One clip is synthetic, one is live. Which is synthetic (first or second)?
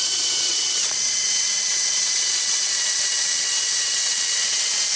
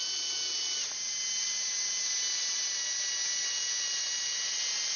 first